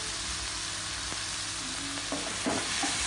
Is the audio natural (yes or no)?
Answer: yes